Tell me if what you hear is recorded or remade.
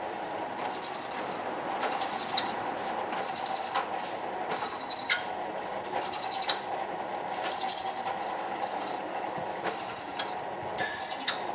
recorded